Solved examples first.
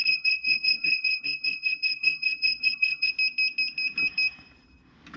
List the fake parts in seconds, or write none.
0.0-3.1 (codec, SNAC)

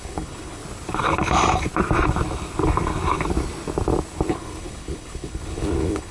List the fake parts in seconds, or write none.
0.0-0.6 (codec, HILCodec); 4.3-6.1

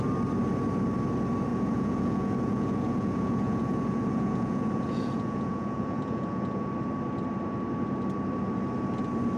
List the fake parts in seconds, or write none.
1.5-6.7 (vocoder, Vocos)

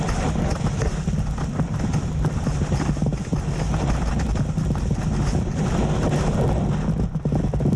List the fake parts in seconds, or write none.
none